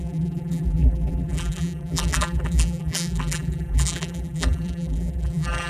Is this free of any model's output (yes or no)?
no